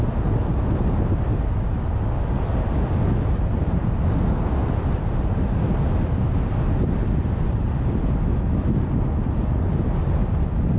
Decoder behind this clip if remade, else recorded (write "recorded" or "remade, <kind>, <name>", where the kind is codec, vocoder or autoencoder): recorded